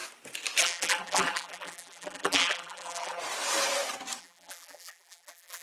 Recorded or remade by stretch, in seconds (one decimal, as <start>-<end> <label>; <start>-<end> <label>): 0.0-0.6 recorded; 0.6-3.2 remade; 3.2-4.2 recorded; 4.2-5.6 remade